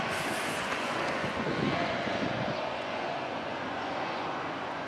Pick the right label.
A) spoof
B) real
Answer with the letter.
A